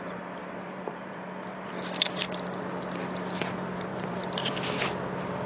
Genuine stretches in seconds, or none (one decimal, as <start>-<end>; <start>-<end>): 0.0-0.4; 1.7-3.9; 4.5-5.5